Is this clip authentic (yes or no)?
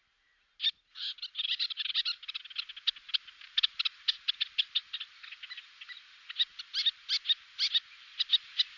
yes